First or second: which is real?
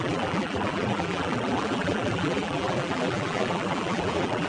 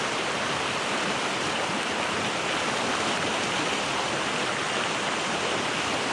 second